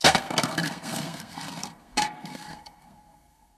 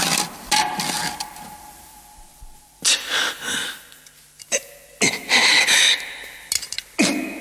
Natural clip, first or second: second